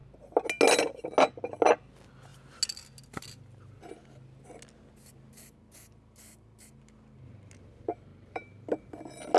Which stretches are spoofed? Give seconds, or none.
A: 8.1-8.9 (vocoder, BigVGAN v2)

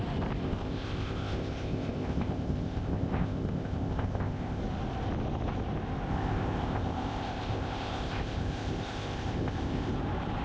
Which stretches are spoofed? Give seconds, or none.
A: 0.4-4.6 (codec, ZipCodec); 6.1-9.9

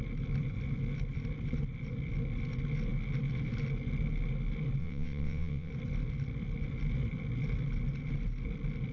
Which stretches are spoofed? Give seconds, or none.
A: 4.8-5.7 (vocoder, WaveNeXt)